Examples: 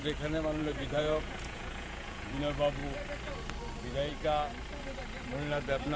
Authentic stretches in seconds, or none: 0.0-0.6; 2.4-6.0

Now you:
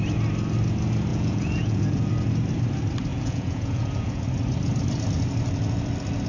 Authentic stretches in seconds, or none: 0.0-1.1; 2.1-3.1; 4.2-6.3

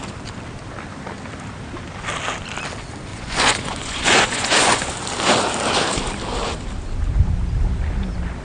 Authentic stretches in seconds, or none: 0.0-3.1; 4.9-8.4

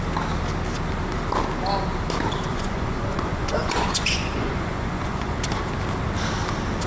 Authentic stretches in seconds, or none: 0.0-2.5; 5.4-6.9

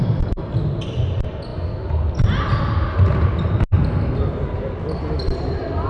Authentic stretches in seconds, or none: 0.0-5.9